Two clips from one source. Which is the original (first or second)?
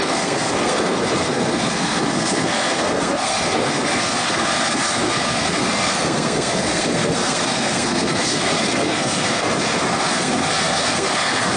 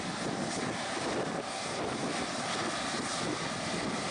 second